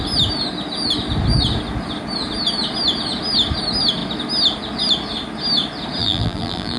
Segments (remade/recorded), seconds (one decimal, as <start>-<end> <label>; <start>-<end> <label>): 0.0-6.0 recorded; 6.0-6.8 remade